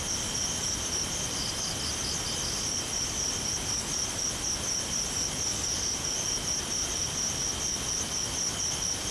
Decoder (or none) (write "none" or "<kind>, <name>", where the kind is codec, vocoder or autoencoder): none